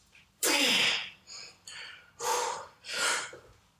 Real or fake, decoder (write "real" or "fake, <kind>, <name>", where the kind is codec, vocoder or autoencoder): fake, vocoder, BigVGAN v2